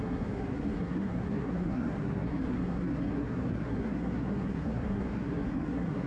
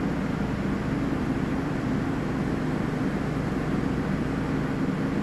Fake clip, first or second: first